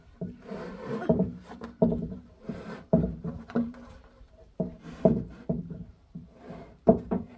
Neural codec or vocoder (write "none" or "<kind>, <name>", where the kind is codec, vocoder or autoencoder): vocoder, BigVGAN v2